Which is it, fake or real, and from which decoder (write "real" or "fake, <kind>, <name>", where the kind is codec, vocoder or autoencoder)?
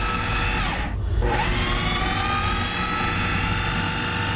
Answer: real